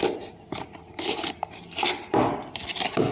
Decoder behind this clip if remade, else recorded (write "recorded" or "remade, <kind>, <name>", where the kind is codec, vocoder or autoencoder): remade, vocoder, BigVGAN v2